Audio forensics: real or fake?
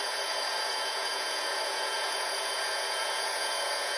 fake